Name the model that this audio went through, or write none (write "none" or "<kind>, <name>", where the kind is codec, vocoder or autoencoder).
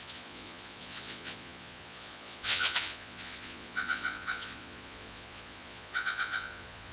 vocoder, Vocos